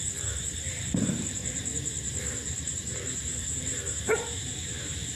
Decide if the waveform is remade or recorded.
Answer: remade